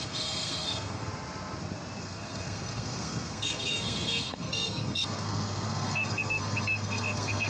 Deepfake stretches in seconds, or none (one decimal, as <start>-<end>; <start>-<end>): 0.0-1.1; 2.0-7.5